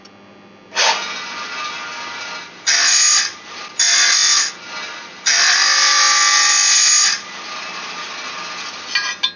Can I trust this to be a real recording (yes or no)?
yes